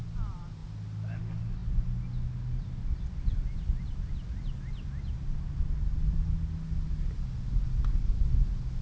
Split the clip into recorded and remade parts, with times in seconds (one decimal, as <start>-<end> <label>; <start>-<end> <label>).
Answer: 0.0-8.8 recorded